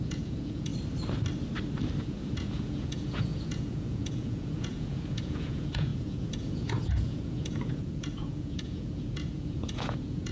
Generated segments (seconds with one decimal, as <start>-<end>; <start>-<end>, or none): 0.0-0.7; 2.0-10.3